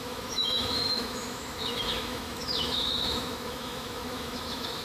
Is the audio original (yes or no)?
no